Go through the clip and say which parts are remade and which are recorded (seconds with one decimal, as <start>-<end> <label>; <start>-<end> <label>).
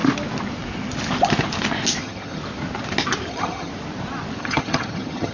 0.0-2.0 recorded; 2.0-2.4 remade; 2.4-3.3 recorded; 3.3-3.7 remade; 3.7-4.4 recorded; 4.4-5.3 remade